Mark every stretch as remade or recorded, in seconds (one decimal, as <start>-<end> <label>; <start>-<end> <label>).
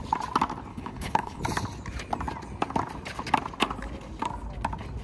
0.0-0.7 recorded; 0.7-1.4 remade; 1.4-5.0 recorded